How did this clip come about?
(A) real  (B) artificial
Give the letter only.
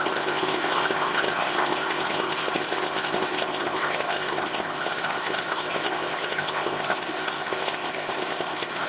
B